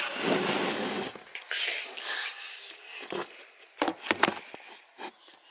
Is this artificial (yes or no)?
no